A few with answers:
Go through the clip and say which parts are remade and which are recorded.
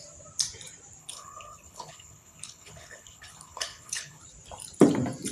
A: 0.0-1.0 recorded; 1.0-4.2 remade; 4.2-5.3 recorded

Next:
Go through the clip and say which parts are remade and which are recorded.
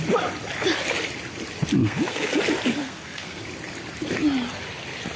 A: 0.0-1.8 recorded; 1.8-2.4 remade; 2.4-2.8 recorded; 2.8-3.4 remade; 3.4-5.2 recorded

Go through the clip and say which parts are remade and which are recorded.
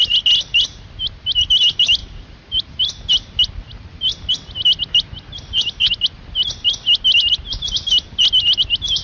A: 0.0-9.0 recorded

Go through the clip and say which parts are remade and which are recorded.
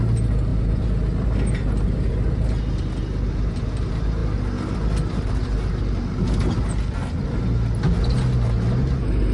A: 0.0-9.3 recorded